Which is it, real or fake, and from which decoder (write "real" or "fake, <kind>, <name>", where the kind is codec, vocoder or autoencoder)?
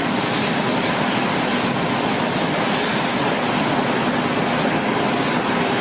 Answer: real